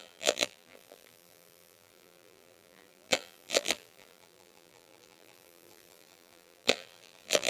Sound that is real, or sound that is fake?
fake